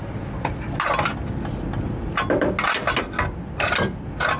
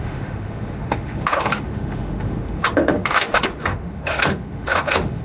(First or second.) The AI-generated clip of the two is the second